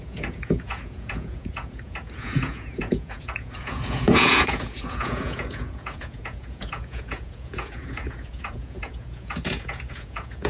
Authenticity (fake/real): fake